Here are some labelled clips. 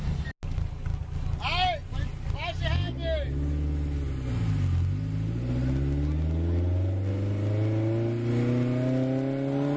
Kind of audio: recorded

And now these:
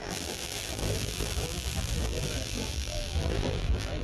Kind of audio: remade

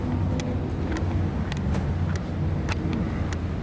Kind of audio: recorded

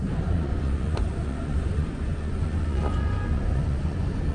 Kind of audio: remade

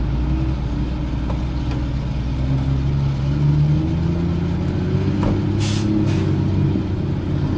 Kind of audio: recorded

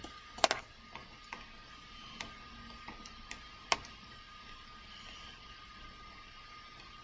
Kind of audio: recorded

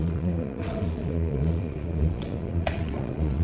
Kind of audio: remade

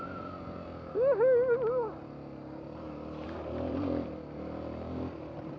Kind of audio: recorded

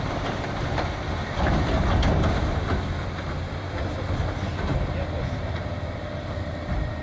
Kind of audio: recorded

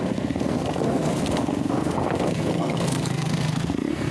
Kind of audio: remade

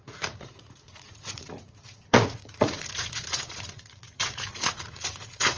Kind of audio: remade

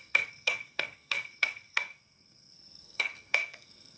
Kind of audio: remade